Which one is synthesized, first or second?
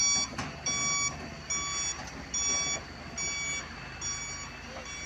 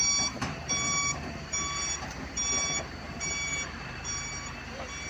second